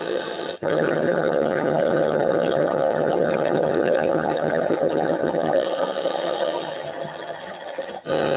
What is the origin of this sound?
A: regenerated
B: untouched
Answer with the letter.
A